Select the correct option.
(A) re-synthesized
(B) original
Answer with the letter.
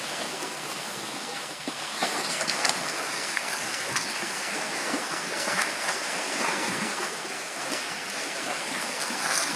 A